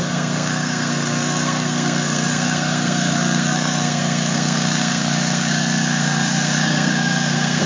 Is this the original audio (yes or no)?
no